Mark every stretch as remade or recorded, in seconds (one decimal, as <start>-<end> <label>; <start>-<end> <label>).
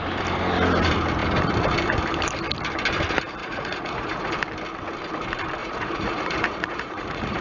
0.0-3.4 recorded; 3.4-4.3 remade; 4.3-5.6 recorded; 5.6-7.4 remade